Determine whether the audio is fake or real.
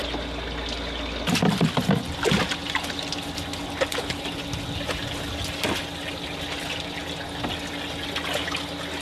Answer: real